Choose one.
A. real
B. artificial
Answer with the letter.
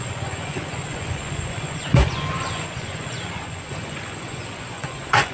B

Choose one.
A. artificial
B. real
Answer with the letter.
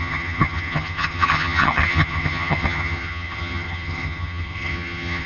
A